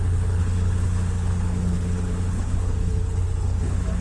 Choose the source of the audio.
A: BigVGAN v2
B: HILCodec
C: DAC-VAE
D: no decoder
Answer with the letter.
B